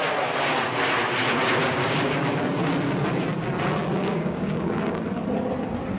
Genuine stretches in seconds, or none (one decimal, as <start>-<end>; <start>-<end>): 0.0-1.6; 2.2-4.0; 5.0-6.0